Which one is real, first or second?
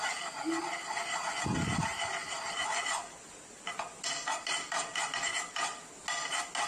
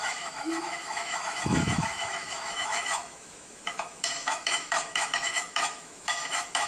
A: first